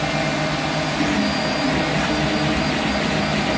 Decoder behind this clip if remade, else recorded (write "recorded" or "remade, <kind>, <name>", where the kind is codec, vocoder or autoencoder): recorded